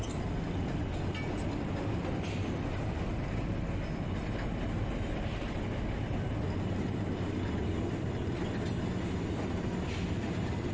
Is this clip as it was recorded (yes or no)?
yes